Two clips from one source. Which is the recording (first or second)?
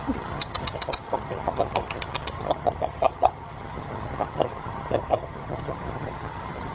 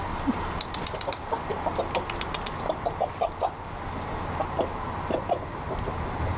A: second